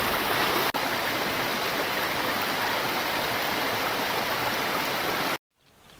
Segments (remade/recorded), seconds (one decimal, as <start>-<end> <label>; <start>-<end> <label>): 0.0-6.0 recorded